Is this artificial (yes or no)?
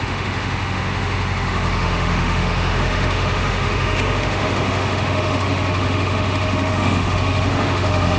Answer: yes